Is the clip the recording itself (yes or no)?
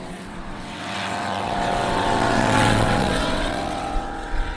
no